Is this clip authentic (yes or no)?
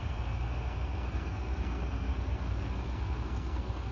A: no